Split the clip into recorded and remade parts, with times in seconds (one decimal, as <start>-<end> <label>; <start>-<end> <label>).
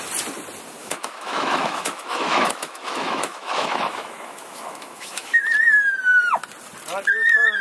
0.0-0.8 recorded; 0.8-5.4 remade; 5.4-7.6 recorded